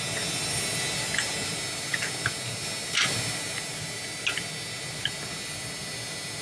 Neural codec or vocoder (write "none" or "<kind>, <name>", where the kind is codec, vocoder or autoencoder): none